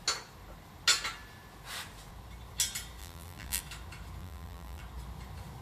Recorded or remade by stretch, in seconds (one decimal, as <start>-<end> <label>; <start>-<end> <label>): 0.0-3.0 recorded; 3.0-3.6 remade; 3.6-4.2 recorded; 4.2-4.8 remade; 4.8-5.6 recorded